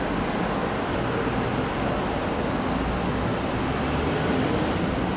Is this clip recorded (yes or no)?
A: yes